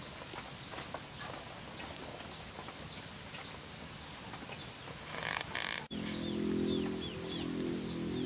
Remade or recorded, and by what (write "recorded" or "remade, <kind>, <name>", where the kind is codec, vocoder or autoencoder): recorded